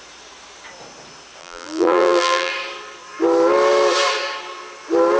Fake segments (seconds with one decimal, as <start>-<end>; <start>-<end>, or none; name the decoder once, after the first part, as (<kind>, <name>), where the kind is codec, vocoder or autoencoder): 1.4-2.5 (vocoder, BigVGAN v2)